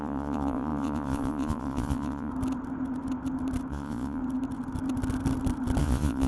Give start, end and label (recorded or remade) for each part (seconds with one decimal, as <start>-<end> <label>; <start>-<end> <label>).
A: 0.0-2.3 remade; 2.3-3.7 recorded; 3.7-4.2 remade; 4.2-5.8 recorded; 5.8-6.3 remade